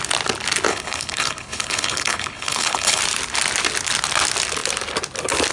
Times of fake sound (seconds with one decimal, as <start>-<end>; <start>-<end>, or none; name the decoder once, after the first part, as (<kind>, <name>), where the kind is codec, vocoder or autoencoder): 0.7-3.0 (codec, HILCodec)